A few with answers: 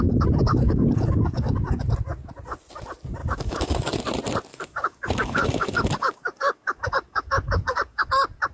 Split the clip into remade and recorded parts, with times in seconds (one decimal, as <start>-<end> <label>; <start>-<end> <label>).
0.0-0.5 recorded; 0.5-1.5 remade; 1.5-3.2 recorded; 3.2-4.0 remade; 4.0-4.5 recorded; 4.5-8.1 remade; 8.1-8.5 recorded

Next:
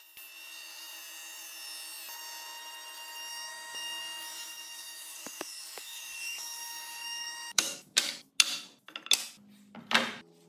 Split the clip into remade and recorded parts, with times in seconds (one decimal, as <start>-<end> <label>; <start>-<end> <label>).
0.0-3.3 recorded; 3.3-8.3 remade; 8.3-10.5 recorded

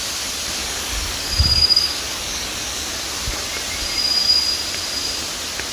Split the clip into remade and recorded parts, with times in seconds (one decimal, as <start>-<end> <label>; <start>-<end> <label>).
0.0-0.6 recorded; 0.6-2.9 remade; 2.9-5.7 recorded

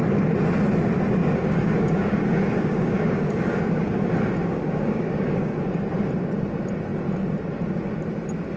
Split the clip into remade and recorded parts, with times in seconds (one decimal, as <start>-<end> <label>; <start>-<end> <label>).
0.0-1.2 recorded; 1.2-4.0 remade; 4.0-4.4 recorded; 4.4-5.5 remade; 5.5-8.6 recorded

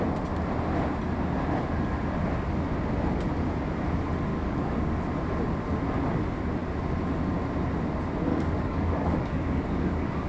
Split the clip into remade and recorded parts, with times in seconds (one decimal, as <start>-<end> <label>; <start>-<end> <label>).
0.0-4.3 recorded; 4.3-5.0 remade; 5.0-8.3 recorded; 8.3-10.3 remade

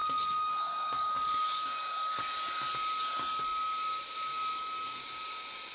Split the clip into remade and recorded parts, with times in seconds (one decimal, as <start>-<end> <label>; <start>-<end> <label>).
0.0-2.2 remade; 2.2-5.7 recorded

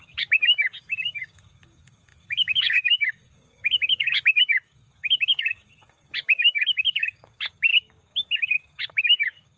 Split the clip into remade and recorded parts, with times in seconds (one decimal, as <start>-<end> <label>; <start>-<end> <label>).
0.0-9.6 remade

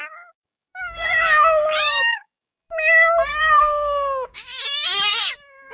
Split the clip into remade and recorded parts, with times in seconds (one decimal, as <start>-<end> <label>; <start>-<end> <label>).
0.0-5.7 remade